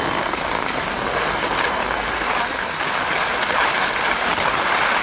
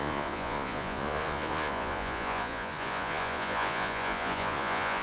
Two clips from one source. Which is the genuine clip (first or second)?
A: first